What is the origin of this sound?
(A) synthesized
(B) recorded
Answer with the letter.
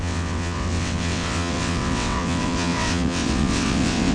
A